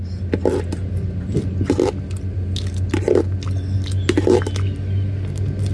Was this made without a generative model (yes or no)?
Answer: yes